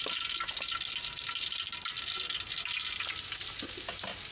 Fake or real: real